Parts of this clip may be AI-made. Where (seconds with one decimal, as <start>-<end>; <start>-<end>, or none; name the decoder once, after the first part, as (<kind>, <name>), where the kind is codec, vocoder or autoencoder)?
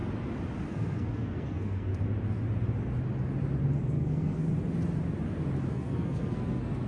0.7-1.9 (codec, SNAC); 3.8-4.4; 5.7-6.9